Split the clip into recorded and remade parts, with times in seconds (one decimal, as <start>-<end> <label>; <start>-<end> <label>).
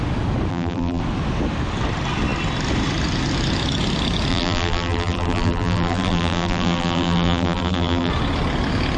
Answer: 0.0-0.5 recorded; 0.5-1.0 remade; 1.0-4.3 recorded; 4.3-8.1 remade; 8.1-9.0 recorded